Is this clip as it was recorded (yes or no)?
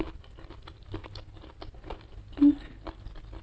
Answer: yes